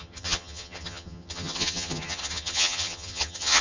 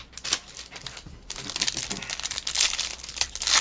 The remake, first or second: first